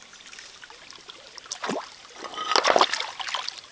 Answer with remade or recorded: recorded